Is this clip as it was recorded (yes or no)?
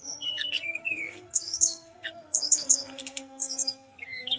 no